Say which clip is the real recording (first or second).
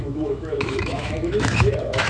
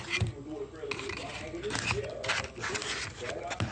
second